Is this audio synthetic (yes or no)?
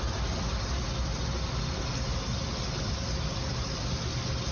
no